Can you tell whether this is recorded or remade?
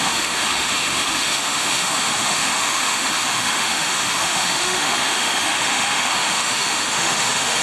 remade